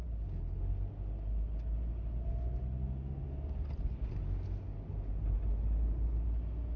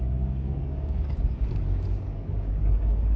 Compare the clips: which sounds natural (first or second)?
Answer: first